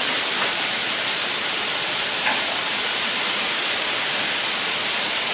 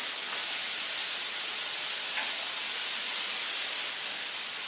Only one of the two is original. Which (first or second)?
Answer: second